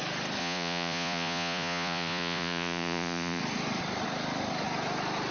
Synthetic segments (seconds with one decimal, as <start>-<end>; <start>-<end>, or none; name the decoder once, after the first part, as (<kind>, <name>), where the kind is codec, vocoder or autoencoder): 0.4-3.4 (vocoder, Vocos)